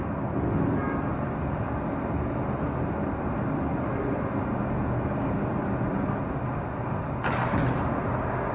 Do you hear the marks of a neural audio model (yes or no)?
no